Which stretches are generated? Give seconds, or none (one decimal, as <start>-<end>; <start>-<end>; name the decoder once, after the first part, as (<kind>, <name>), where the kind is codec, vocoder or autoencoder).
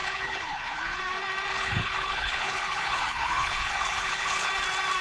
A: 0.0-1.0 (codec, HILCodec); 1.5-4.5